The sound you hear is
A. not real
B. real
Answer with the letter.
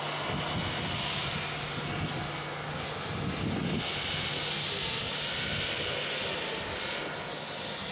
B